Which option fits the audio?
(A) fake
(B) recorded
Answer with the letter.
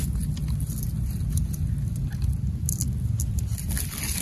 B